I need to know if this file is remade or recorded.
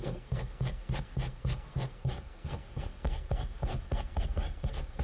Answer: remade